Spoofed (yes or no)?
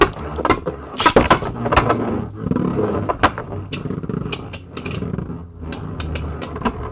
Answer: no